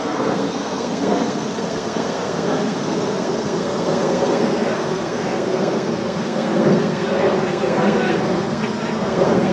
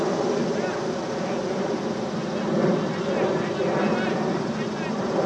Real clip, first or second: second